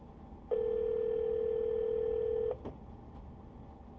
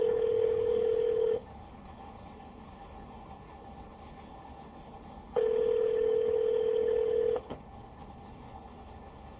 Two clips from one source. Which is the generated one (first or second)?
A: second